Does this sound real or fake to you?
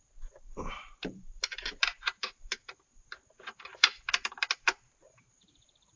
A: fake